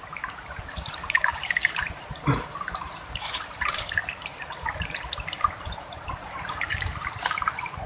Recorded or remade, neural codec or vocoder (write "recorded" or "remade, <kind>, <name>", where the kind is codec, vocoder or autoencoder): remade, vocoder, BigVGAN v2